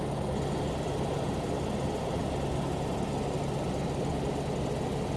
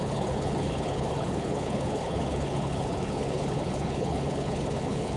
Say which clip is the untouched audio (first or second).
first